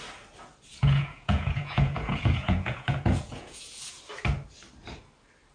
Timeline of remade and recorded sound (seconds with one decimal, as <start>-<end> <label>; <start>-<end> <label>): 0.0-0.7 recorded; 0.7-4.0 remade; 4.0-5.5 recorded